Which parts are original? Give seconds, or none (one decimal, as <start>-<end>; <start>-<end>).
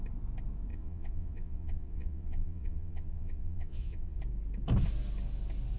0.0-0.7; 4.2-5.8